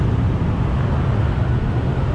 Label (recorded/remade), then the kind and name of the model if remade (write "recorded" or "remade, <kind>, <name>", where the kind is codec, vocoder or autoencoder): recorded